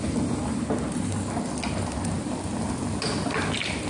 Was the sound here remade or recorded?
recorded